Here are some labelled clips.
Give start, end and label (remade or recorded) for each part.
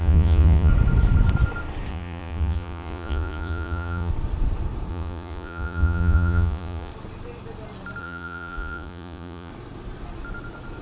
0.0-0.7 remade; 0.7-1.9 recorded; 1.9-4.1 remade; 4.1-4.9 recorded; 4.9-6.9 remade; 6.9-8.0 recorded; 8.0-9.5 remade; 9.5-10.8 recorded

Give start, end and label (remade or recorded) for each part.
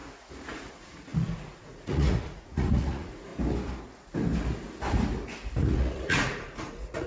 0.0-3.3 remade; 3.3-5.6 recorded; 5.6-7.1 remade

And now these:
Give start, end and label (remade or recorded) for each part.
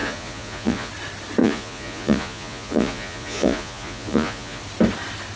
0.0-0.9 remade; 0.9-1.4 recorded; 1.4-4.6 remade; 4.6-5.4 recorded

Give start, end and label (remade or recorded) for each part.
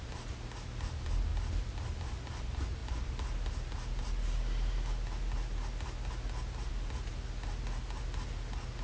0.0-8.8 recorded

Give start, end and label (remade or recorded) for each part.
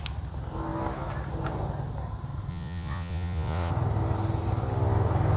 0.0-2.5 recorded; 2.5-3.7 remade; 3.7-5.4 recorded